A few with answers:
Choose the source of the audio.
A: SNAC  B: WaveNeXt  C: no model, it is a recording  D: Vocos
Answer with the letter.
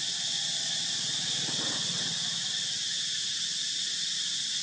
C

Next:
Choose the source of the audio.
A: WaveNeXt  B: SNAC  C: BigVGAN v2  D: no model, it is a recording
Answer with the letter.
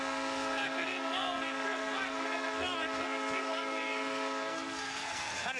B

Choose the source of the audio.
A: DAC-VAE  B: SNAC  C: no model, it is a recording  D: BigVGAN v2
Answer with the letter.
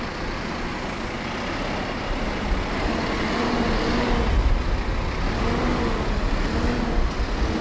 C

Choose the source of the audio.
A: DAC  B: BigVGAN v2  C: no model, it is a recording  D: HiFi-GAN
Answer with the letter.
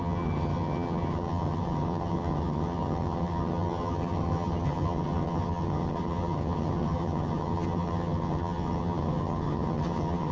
D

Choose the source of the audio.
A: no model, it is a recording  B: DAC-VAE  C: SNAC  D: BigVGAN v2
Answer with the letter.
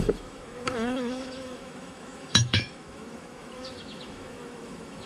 B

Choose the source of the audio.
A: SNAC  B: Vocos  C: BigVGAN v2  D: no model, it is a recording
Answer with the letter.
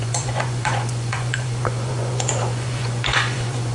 B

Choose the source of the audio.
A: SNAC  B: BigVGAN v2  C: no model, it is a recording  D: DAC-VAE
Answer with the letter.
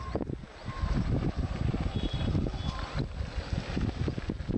C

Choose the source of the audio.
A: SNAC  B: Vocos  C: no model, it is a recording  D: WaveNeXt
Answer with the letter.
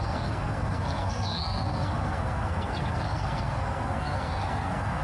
A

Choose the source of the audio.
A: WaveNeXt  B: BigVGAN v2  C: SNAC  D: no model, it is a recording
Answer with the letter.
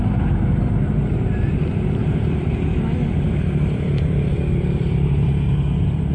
B